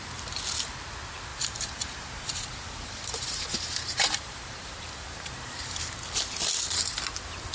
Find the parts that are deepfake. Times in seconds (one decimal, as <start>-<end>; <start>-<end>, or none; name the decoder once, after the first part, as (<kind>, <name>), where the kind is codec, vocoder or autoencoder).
1.3-5.8 (vocoder, BigVGAN v2)